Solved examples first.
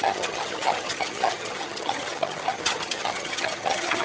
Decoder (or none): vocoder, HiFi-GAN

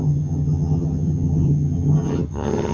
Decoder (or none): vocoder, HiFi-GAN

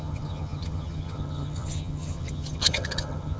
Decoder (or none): vocoder, HiFi-GAN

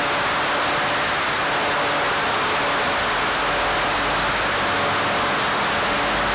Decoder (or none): none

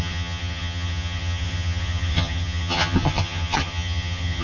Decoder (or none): vocoder, HiFi-GAN